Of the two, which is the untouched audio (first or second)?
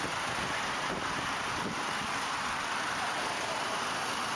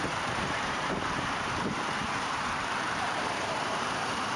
first